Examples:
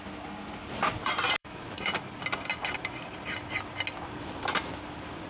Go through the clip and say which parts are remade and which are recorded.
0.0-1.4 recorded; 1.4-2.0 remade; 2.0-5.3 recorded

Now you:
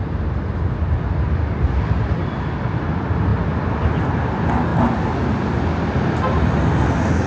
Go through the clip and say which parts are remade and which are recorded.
0.0-7.3 recorded

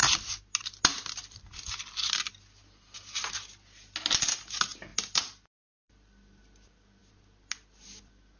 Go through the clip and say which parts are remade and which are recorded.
0.0-8.4 recorded